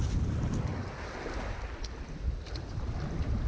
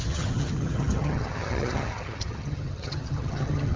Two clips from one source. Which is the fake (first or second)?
second